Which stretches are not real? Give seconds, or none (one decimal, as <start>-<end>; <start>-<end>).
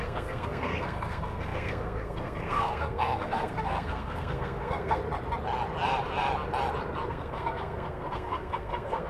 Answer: 0.0-5.0; 7.1-9.1